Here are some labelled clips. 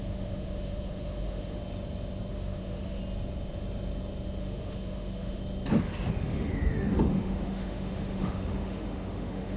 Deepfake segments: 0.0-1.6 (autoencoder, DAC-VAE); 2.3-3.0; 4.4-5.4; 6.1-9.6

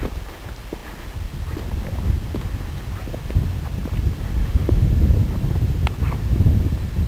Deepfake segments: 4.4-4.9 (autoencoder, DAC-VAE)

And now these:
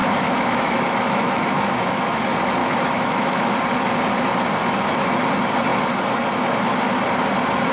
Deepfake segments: 0.0-2.2 (autoencoder, DAC-VAE); 2.6-3.4

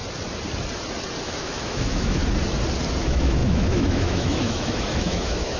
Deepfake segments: 1.2-2.2 (autoencoder, DAC-VAE); 3.0-5.6